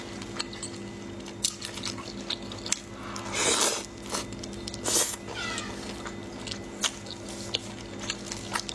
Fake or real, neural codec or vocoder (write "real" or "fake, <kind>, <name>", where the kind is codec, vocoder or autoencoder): real